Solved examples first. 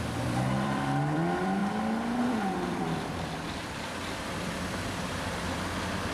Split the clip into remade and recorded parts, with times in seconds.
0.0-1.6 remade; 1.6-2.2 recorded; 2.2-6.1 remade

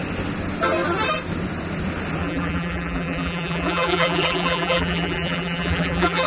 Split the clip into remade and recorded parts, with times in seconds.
0.0-2.2 recorded; 2.2-6.3 remade

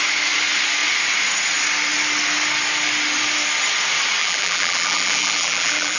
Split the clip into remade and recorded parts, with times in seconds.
0.0-4.2 recorded; 4.2-6.0 remade

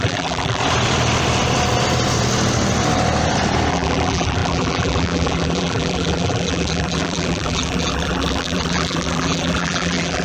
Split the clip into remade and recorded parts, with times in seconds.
0.0-0.6 remade; 0.6-3.7 recorded; 3.7-10.2 remade

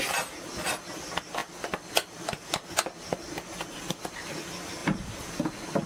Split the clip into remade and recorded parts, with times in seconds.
0.0-4.8 recorded; 4.8-5.3 remade; 5.3-5.9 recorded

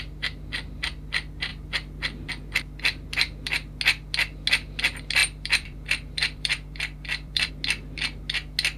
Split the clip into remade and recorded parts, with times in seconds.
0.0-5.2 recorded; 5.2-7.5 remade; 7.5-8.8 recorded